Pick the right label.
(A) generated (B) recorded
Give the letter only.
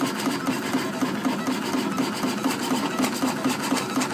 B